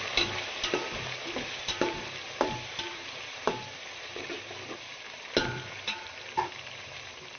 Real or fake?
fake